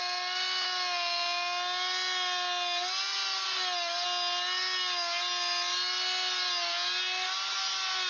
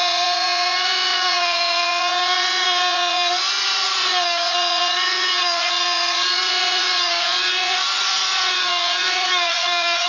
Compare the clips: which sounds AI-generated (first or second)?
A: second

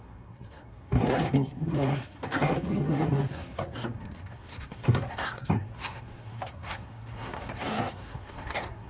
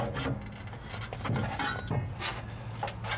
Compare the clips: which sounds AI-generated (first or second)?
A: first